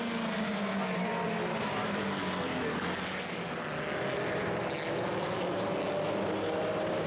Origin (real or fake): real